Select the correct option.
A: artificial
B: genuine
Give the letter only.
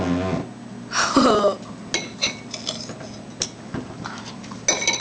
B